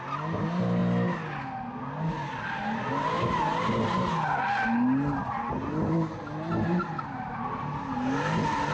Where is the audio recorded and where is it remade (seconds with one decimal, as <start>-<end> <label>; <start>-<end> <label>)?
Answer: 0.0-8.7 recorded